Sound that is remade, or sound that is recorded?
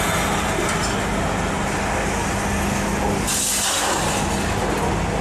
recorded